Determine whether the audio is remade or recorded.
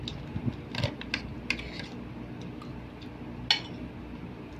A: recorded